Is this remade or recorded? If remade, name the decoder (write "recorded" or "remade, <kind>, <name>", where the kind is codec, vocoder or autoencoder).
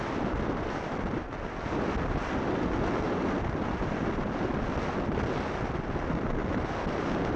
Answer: recorded